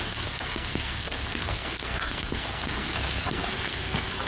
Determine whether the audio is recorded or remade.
remade